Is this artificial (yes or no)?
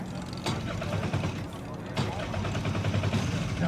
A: no